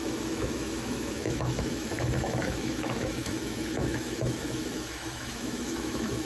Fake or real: fake